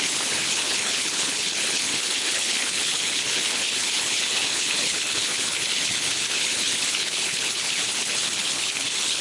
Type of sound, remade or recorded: remade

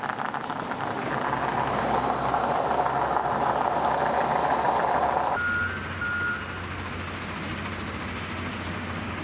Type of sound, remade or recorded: recorded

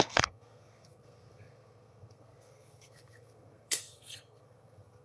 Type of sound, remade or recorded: remade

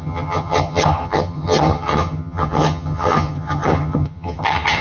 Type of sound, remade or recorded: remade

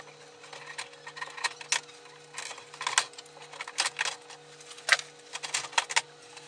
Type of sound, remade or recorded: recorded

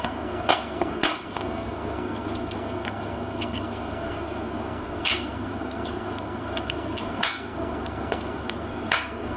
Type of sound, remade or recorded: remade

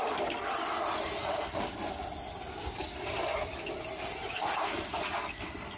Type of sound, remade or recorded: recorded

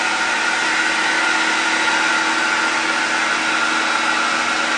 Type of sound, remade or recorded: recorded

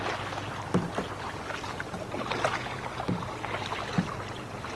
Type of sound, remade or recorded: recorded